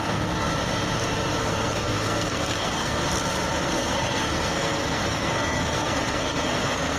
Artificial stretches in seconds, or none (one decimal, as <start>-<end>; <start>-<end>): 0.0-0.5; 1.4-3.0; 3.6-7.0